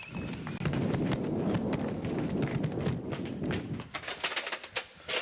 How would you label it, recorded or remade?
recorded